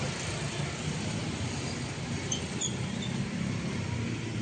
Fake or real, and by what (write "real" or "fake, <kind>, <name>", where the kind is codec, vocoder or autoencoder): real